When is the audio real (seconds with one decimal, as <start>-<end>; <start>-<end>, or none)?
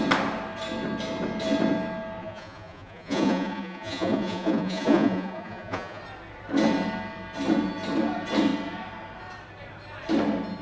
0.0-2.2; 6.0-10.6